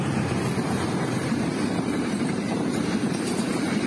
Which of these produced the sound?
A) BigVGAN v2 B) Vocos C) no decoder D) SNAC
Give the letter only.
A